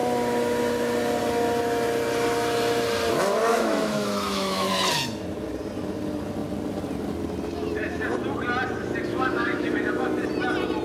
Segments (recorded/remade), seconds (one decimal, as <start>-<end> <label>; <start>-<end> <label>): 0.0-3.5 recorded; 3.5-4.7 remade; 4.7-9.1 recorded; 9.1-10.1 remade; 10.1-10.8 recorded